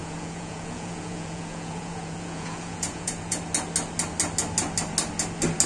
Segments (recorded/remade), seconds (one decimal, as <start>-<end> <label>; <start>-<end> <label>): 0.0-3.4 remade; 3.4-5.7 recorded